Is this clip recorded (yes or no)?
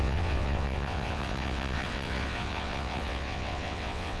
no